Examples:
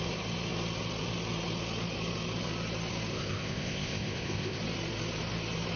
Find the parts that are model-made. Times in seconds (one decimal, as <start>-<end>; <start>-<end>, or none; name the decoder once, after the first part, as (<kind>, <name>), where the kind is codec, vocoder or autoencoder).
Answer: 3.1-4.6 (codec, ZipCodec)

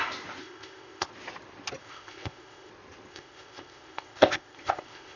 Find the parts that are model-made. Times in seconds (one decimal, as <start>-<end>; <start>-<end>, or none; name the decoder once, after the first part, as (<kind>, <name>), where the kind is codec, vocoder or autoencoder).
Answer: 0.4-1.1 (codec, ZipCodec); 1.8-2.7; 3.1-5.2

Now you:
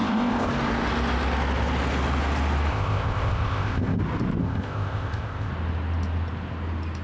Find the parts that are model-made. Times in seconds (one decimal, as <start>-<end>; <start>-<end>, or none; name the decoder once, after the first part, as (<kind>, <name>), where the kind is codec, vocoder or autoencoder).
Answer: 0.0-0.5 (codec, ZipCodec); 2.7-4.0; 4.4-5.5

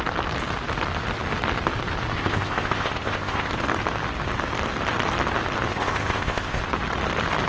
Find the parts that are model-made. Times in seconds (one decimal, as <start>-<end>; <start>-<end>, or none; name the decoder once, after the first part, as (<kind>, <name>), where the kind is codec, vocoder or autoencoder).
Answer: 2.2-3.5 (codec, ZipCodec); 5.7-6.6

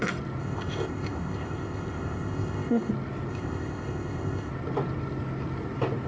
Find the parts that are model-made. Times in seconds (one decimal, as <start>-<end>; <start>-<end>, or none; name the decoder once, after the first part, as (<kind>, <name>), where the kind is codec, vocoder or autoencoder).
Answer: 0.4-2.9 (codec, ZipCodec); 3.3-4.5